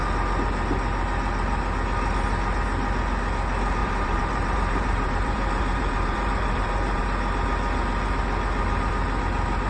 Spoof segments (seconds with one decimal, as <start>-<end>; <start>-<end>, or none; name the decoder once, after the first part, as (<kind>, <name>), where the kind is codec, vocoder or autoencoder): 3.8-7.0 (vocoder, BigVGAN v2)